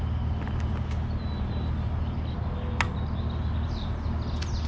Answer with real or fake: real